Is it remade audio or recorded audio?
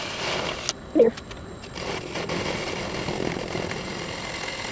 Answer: recorded